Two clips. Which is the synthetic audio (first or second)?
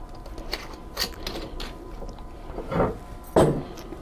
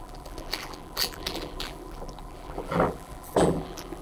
second